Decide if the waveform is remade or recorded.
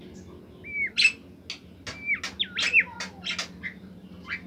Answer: recorded